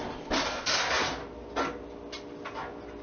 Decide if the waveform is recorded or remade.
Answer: recorded